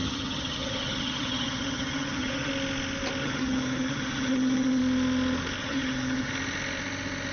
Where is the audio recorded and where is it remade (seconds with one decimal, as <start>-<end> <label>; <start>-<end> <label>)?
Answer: 0.0-2.5 remade; 2.5-3.2 recorded; 3.2-4.8 remade; 4.8-5.6 recorded; 5.6-6.3 remade; 6.3-7.3 recorded